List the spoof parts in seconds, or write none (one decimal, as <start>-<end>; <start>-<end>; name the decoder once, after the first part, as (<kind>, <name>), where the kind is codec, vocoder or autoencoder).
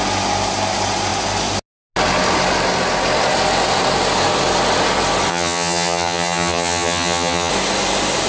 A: 5.3-7.5 (vocoder, HiFi-GAN)